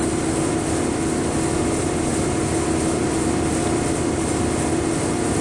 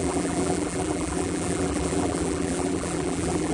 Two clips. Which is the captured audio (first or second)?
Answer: first